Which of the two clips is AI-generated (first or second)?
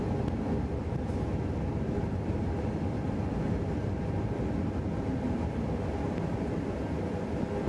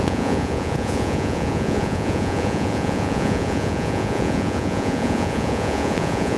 second